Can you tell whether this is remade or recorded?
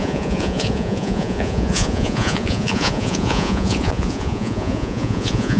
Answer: remade